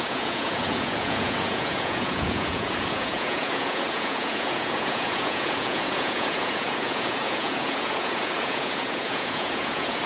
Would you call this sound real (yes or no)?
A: no